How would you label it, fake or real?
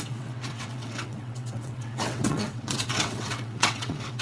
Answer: fake